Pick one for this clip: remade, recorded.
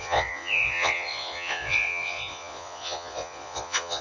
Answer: remade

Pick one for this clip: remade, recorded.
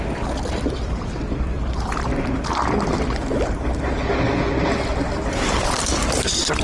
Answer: recorded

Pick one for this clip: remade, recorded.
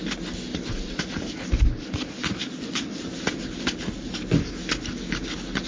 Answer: recorded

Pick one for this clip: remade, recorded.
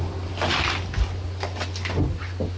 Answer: recorded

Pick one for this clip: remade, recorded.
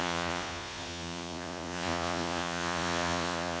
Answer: remade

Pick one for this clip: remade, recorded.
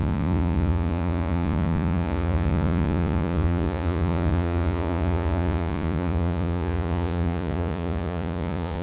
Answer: remade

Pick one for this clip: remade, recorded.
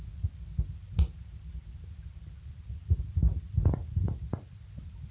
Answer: recorded